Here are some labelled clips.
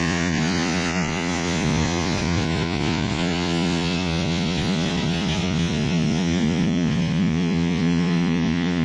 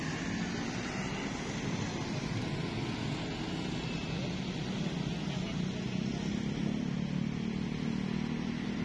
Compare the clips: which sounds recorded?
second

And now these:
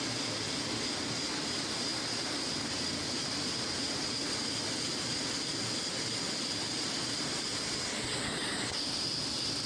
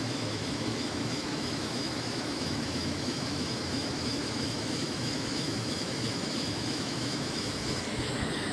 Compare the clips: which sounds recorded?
first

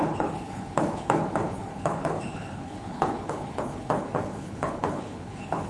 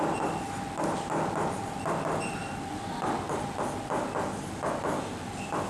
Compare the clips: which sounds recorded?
second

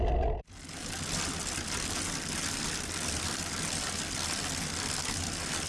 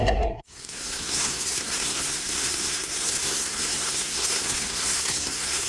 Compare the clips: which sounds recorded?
first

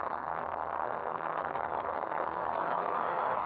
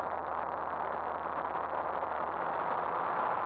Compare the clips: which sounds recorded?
second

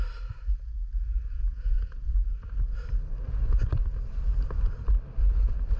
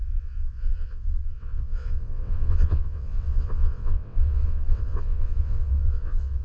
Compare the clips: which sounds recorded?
first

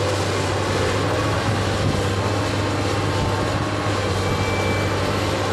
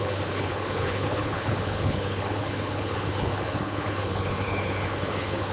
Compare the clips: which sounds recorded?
first